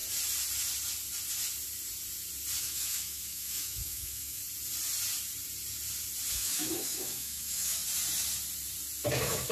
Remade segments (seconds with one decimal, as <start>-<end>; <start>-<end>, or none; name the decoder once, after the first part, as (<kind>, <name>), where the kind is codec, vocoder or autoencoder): 2.6-4.4 (autoencoder, DAC-VAE); 6.3-7.8; 9.1-9.5